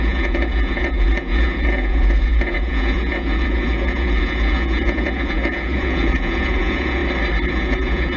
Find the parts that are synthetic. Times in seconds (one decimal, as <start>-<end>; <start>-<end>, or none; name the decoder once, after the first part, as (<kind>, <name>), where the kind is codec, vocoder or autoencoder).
0.0-7.0 (vocoder, Vocos); 7.5-8.2